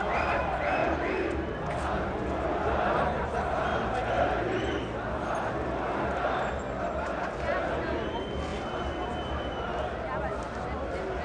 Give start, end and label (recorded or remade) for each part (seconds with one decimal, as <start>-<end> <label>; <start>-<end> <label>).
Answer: 0.0-11.2 recorded